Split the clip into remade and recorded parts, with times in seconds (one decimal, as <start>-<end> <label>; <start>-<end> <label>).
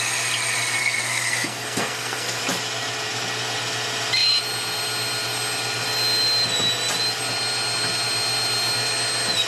0.0-0.8 recorded; 0.8-2.4 remade; 2.4-9.5 recorded